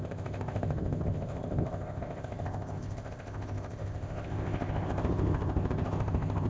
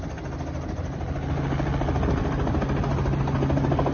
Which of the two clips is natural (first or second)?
second